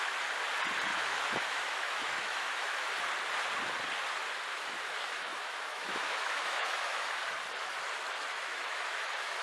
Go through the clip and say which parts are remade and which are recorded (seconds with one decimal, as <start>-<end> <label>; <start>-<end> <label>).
0.0-0.9 recorded; 0.9-2.9 remade; 2.9-4.5 recorded; 4.5-7.2 remade; 7.2-8.3 recorded; 8.3-9.4 remade